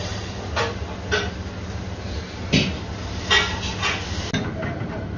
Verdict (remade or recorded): recorded